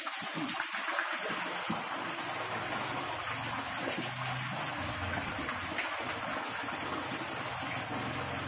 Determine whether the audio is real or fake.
real